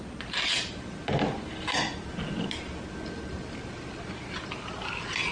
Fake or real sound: real